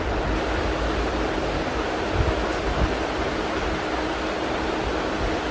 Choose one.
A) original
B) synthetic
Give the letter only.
A